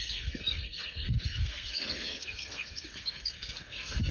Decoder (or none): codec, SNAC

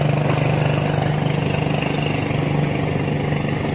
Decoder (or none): none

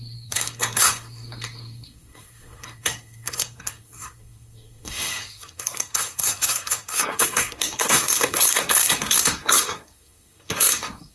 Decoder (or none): codec, SNAC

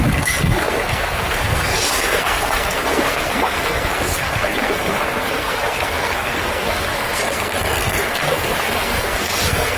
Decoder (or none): codec, SNAC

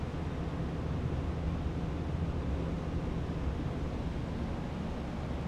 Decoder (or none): none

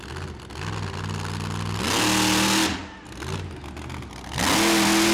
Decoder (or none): none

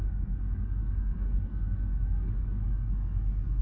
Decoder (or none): codec, SNAC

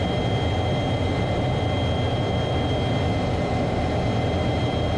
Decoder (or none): none